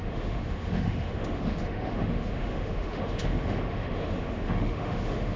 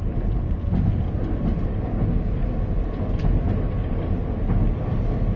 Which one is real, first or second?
second